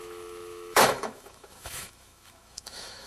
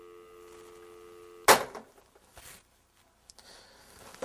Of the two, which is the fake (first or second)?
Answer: first